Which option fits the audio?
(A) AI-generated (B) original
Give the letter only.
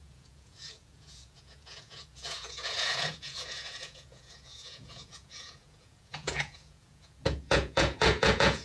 A